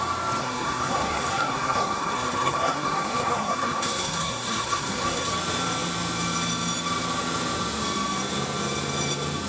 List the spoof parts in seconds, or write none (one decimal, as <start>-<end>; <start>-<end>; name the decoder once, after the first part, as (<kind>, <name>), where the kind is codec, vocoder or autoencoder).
0.4-5.3 (codec, SNAC)